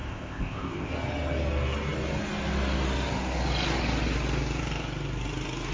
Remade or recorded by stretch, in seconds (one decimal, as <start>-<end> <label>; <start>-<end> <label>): 0.0-0.9 remade; 0.9-5.7 recorded